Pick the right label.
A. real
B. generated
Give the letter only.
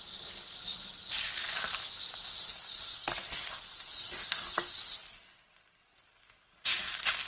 A